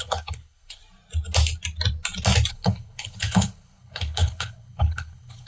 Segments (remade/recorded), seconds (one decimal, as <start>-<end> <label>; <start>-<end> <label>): 0.0-0.8 remade; 0.8-2.5 recorded; 2.5-5.5 remade